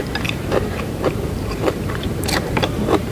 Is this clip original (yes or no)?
no